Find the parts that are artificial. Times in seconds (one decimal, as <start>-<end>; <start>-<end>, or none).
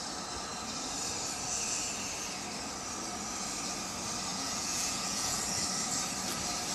4.3-5.4